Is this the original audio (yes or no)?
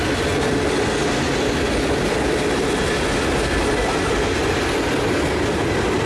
yes